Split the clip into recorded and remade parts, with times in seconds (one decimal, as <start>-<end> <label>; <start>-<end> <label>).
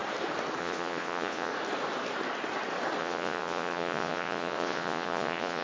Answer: 0.0-0.6 recorded; 0.6-1.5 remade; 1.5-3.0 recorded; 3.0-5.6 remade